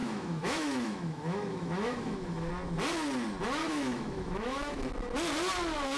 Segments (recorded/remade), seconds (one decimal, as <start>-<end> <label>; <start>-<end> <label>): 0.0-2.5 remade; 2.5-3.6 recorded; 3.6-4.9 remade; 4.9-6.0 recorded